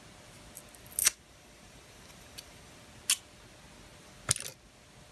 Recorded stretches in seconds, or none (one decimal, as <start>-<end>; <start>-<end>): 0.0-1.0; 2.8-5.1